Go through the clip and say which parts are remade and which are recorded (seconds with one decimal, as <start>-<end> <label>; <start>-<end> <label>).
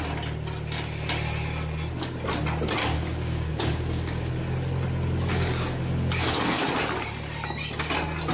0.0-2.9 recorded; 2.9-4.3 remade; 4.3-5.3 recorded; 5.3-6.7 remade; 6.7-8.3 recorded